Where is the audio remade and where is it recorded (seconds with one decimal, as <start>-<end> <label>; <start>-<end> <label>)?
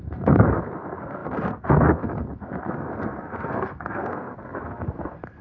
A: 0.0-5.4 remade